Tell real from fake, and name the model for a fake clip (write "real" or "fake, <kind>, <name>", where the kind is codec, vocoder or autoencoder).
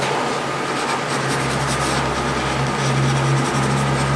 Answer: real